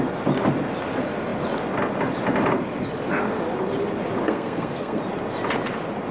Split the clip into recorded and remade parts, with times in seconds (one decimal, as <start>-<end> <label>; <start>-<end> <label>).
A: 0.0-4.2 recorded; 4.2-5.0 remade; 5.0-6.1 recorded

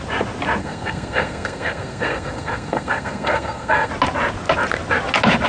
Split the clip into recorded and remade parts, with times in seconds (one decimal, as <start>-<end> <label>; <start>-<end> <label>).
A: 0.0-0.6 recorded; 0.6-3.9 remade; 3.9-5.5 recorded

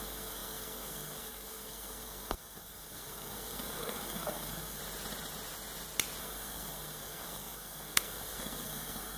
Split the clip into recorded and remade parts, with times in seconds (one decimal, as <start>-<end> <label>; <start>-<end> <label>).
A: 0.0-4.8 remade; 4.8-6.2 recorded; 6.2-9.2 remade

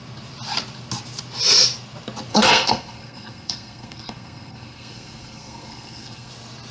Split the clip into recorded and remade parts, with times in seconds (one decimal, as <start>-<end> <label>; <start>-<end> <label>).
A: 0.0-2.3 recorded; 2.3-6.3 remade; 6.3-6.7 recorded

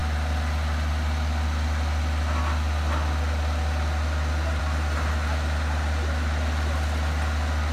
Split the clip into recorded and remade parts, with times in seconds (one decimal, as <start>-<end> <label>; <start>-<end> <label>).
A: 0.0-7.7 recorded

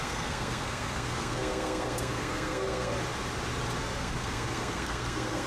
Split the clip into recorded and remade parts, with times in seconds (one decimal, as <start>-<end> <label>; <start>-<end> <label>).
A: 0.0-2.9 remade; 2.9-3.8 recorded; 3.8-5.5 remade